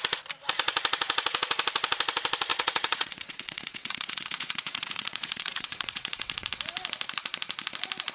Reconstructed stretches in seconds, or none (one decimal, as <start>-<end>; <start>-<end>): 2.5-6.5